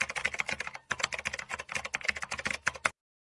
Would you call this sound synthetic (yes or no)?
no